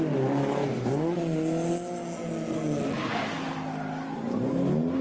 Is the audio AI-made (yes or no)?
no